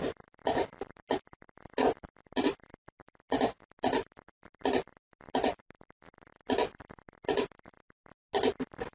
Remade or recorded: recorded